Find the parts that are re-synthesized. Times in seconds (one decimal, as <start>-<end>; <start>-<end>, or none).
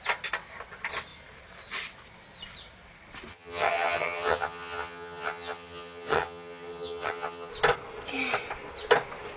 3.3-7.5